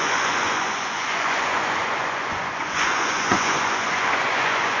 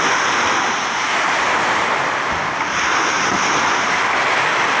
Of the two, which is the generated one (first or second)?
first